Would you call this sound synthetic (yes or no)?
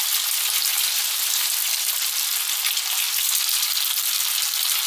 no